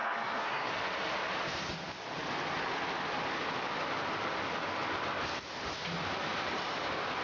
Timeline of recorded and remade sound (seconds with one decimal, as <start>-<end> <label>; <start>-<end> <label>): 0.0-0.7 remade; 0.7-7.2 recorded